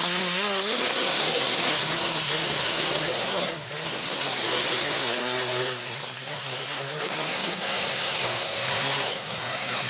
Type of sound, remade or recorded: remade